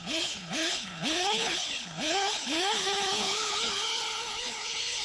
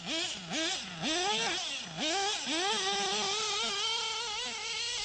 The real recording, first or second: second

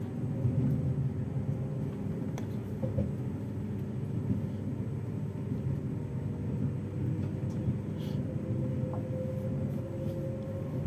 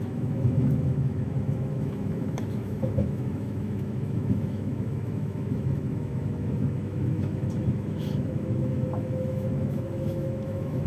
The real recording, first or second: first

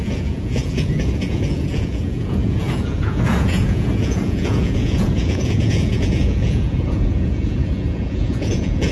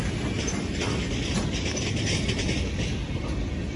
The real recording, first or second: second